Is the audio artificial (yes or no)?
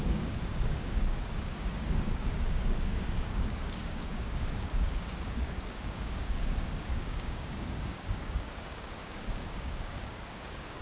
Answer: yes